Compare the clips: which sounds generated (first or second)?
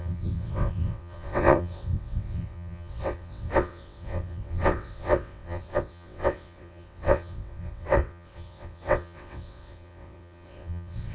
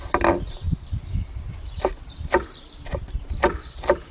first